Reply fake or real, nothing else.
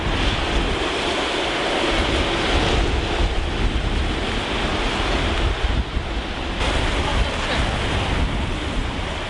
real